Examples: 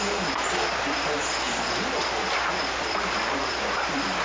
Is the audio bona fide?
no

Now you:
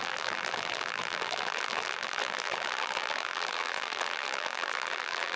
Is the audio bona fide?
no